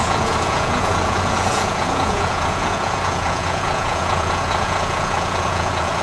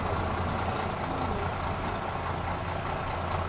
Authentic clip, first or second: second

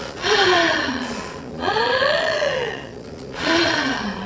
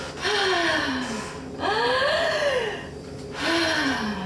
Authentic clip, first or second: second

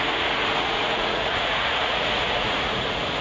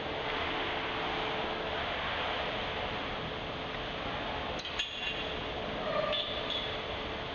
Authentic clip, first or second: second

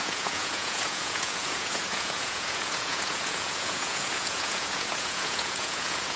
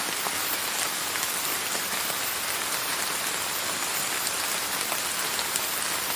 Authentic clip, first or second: second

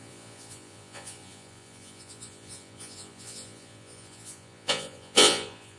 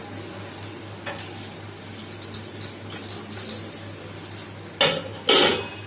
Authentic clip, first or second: second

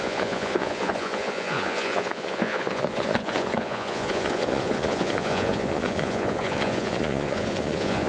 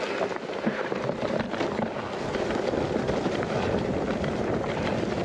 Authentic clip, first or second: second